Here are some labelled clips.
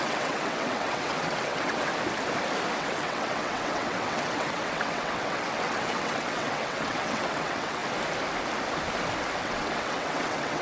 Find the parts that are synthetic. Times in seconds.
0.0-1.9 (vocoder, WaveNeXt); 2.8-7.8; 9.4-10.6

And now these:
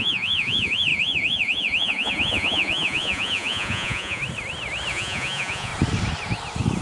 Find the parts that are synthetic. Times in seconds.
0.0-4.2 (vocoder, Vocos); 4.9-5.7

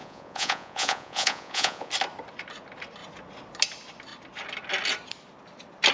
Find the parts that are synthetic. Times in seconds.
0.0-1.9 (vocoder, Vocos)

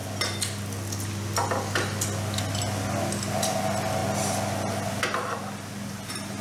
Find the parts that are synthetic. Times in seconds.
none